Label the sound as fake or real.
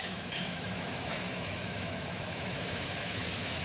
fake